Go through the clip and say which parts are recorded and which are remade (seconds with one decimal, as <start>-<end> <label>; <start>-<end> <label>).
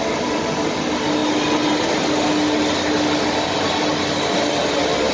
0.0-5.1 recorded